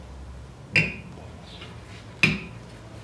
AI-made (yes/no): no